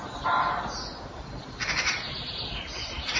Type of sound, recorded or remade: recorded